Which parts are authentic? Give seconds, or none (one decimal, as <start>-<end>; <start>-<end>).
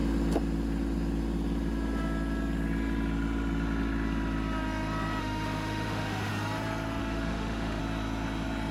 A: 0.0-5.2; 6.3-7.0; 7.8-8.7